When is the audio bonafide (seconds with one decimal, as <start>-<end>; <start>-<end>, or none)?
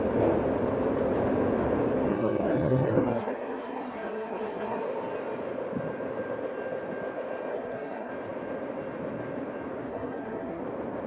0.0-2.1; 4.8-7.5; 8.1-9.9; 10.6-11.1